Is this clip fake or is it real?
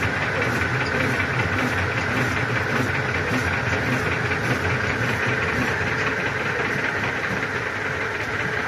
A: real